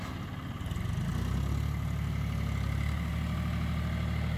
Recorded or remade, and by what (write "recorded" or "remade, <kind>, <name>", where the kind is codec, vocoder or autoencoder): recorded